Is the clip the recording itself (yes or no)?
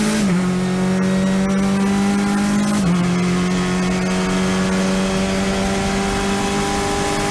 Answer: yes